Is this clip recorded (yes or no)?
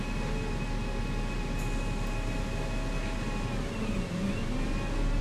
yes